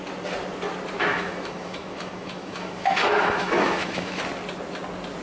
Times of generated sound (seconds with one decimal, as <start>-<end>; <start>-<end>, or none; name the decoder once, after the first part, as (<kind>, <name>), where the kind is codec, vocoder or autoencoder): 1.1-4.2 (autoencoder, DAC-VAE)